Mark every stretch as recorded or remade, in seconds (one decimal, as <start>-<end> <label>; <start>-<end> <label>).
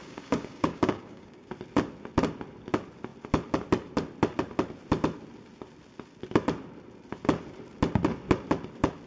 0.0-1.5 remade; 1.5-9.1 recorded